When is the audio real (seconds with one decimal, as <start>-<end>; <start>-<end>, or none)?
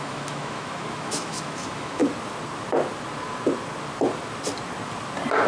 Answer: 2.0-5.5